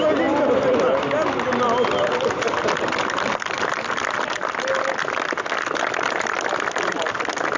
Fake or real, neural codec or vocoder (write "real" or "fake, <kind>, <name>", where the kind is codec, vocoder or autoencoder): real